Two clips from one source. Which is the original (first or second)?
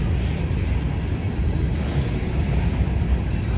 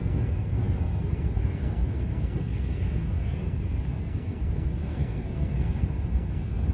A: first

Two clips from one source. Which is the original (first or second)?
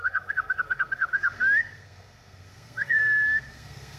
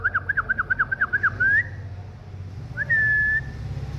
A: second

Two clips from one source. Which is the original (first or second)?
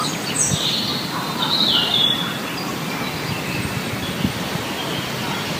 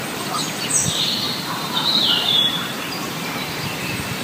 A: first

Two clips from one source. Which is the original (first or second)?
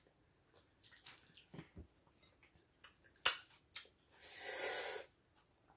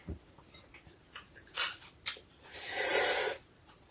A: first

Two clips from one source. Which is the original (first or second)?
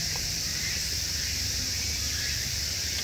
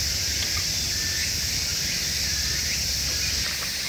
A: second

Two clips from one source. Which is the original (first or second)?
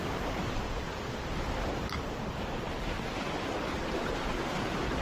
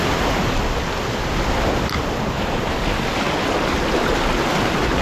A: second